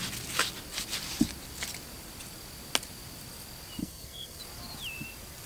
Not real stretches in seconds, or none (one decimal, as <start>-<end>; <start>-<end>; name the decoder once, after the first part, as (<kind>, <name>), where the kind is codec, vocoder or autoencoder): 3.8-4.4 (codec, SNAC)